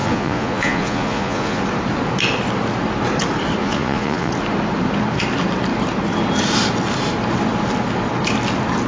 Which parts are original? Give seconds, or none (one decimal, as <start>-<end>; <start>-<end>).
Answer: 1.6-3.6; 4.3-8.9